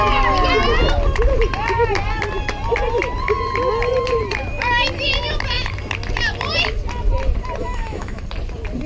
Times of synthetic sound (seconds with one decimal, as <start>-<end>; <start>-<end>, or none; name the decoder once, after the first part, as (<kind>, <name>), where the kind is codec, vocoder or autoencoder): 7.6-8.2 (autoencoder, DAC-VAE)